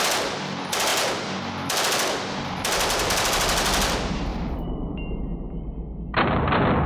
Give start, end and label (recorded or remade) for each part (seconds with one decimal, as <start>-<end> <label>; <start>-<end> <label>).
0.0-6.9 recorded